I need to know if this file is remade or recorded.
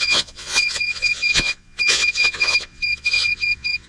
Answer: remade